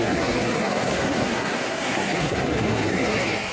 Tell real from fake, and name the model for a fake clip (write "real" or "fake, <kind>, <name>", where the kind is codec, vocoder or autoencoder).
fake, codec, SNAC